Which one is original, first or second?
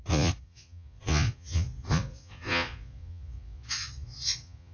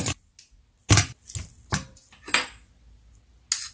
second